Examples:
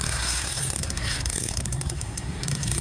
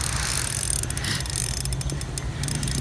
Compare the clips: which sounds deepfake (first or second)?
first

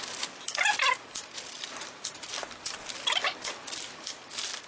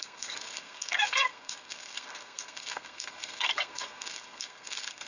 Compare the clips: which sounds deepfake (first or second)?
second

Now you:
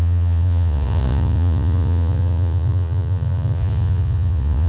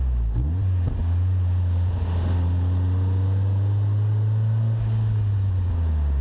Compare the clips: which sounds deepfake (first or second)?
first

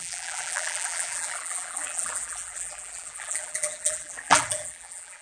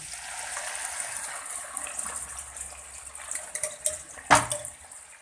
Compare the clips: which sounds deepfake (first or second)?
first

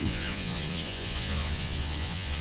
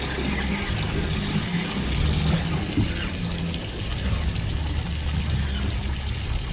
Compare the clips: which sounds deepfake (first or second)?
first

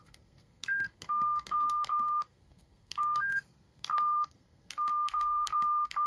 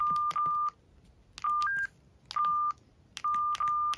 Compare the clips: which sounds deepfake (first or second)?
first